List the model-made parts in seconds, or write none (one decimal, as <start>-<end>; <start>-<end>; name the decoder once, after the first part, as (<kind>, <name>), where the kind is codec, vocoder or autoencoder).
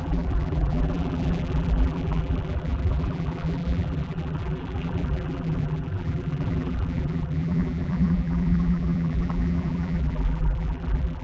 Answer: 0.0-11.2 (vocoder, BigVGAN v2)